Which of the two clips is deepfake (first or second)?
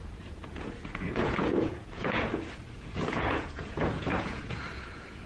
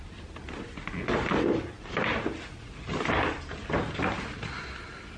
first